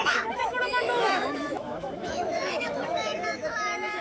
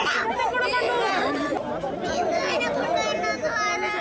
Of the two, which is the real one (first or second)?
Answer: second